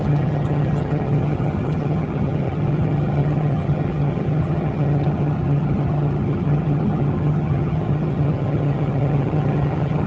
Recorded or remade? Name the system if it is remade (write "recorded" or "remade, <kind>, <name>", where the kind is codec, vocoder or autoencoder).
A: remade, vocoder, HiFi-GAN